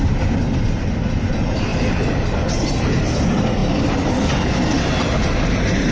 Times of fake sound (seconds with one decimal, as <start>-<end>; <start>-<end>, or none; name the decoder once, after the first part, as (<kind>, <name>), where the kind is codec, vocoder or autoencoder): 1.7-2.8 (vocoder, BigVGAN v2)